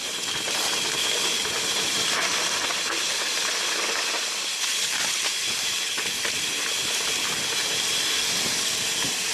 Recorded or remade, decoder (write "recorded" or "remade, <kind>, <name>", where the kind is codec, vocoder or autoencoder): recorded